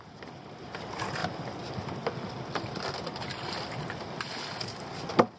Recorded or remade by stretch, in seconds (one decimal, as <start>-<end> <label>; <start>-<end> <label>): 0.0-5.4 recorded